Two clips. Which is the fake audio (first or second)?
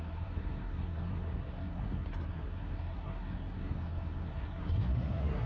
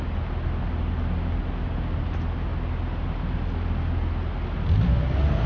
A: first